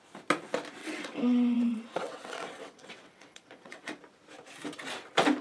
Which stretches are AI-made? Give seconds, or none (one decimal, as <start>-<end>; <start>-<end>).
0.8-4.0